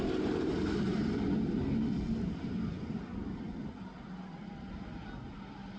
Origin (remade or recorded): recorded